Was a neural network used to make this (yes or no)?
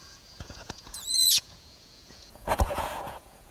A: yes